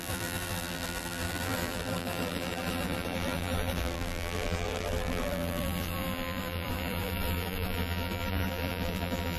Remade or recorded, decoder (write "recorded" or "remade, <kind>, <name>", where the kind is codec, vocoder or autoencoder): remade, vocoder, BigVGAN v2